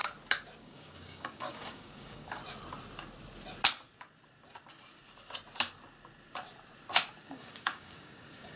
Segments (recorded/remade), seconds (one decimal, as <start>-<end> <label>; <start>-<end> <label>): 0.0-0.6 recorded; 0.6-2.4 remade; 2.4-7.2 recorded; 7.2-8.6 remade